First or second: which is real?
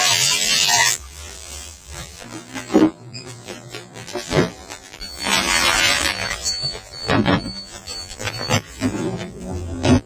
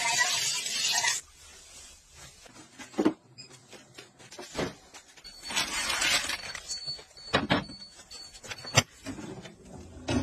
second